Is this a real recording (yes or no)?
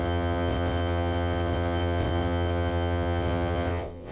no